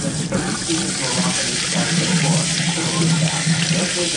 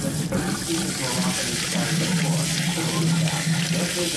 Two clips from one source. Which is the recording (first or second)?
second